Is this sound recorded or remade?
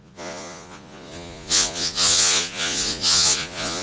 remade